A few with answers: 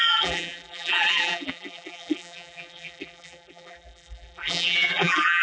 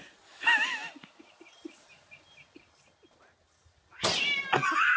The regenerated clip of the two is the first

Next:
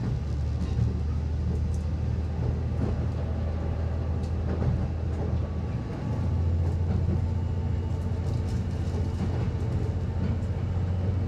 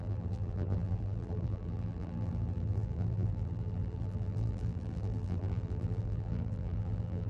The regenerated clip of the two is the second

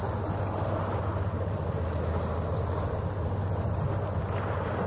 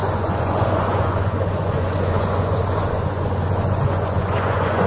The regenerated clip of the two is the second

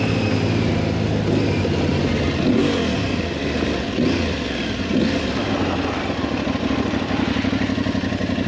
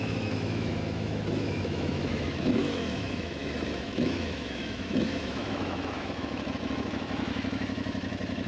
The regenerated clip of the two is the second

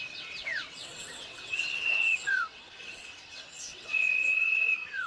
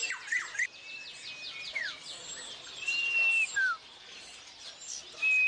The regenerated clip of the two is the first